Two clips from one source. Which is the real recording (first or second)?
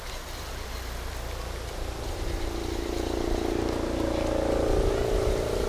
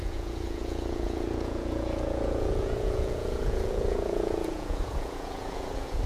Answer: first